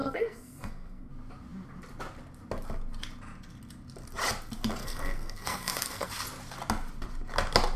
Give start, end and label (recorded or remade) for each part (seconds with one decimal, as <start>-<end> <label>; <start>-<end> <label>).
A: 0.0-1.1 remade; 1.1-4.8 recorded; 4.8-6.1 remade; 6.1-7.8 recorded